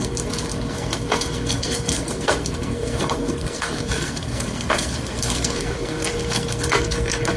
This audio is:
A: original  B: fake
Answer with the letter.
B